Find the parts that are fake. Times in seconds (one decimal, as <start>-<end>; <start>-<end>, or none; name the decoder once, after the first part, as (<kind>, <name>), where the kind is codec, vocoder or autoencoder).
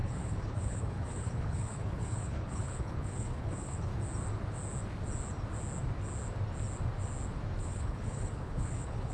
0.0-3.9 (codec, HILCodec); 7.6-9.1